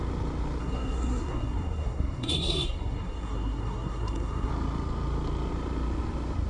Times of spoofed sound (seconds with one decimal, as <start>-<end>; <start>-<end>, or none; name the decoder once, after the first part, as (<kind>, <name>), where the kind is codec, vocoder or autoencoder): 0.6-4.5 (codec, SNAC)